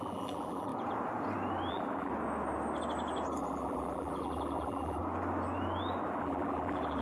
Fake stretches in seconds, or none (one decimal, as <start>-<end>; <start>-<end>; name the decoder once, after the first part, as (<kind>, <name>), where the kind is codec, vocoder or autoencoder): 0.0-0.7 (vocoder, BigVGAN v2); 1.7-2.1; 3.4-5.0; 6.2-7.0